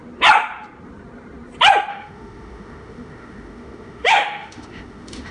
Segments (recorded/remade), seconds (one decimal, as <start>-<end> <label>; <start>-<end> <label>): 0.0-1.9 recorded; 1.9-5.3 remade